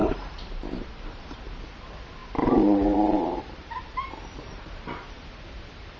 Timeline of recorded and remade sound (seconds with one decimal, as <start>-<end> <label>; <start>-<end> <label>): 0.0-1.6 remade; 1.6-2.2 recorded; 2.2-6.0 remade